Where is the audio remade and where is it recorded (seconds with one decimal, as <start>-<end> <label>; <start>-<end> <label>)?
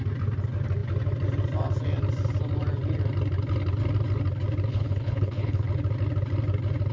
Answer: 0.0-4.7 recorded; 4.7-5.7 remade; 5.7-6.9 recorded